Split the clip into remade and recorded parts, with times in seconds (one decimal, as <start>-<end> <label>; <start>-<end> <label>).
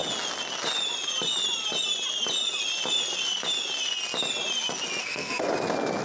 0.0-5.0 recorded; 5.0-5.5 remade; 5.5-6.0 recorded